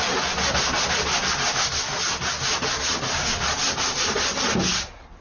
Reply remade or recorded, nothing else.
recorded